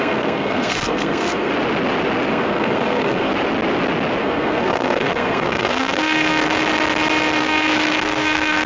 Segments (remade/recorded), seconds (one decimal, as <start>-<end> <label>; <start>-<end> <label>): 0.0-1.5 remade; 1.5-2.3 recorded; 2.3-3.3 remade; 3.3-4.2 recorded; 4.2-6.6 remade; 6.6-7.4 recorded; 7.4-8.7 remade